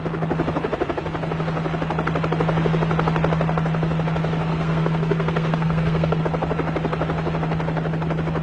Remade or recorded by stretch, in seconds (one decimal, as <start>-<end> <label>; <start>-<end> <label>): 0.0-4.5 recorded; 4.5-6.2 remade; 6.2-8.4 recorded